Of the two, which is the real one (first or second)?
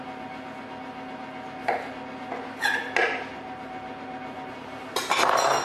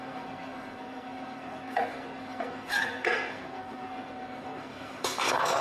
first